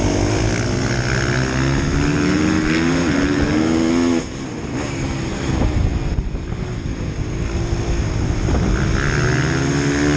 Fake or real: real